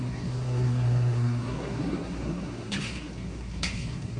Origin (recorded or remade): remade